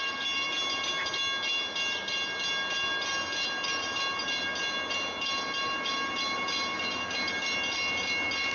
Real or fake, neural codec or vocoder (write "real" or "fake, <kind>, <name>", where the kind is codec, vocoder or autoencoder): real